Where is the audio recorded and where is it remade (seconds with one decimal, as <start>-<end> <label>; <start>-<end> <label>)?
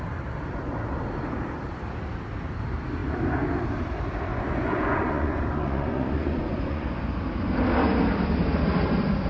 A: 0.0-4.3 recorded; 4.3-7.0 remade; 7.0-9.3 recorded